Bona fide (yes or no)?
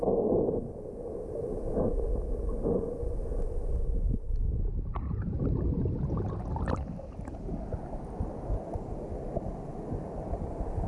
yes